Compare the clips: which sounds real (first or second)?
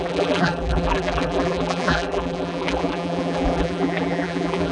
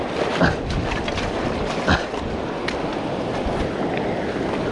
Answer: second